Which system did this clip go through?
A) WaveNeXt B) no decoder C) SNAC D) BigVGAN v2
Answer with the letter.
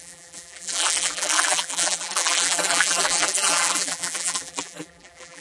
D